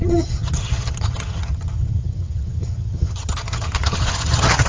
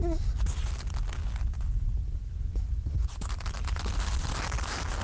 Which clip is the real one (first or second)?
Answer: second